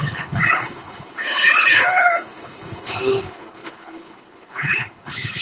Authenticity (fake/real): fake